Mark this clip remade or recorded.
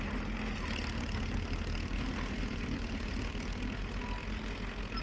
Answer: recorded